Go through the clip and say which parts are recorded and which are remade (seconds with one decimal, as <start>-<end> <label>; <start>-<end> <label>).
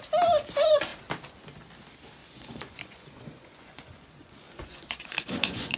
0.0-2.2 recorded; 2.2-5.8 remade